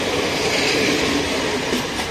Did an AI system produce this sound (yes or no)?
no